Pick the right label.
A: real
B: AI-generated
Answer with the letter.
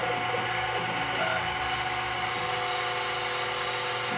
A